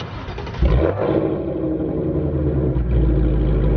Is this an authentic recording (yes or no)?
yes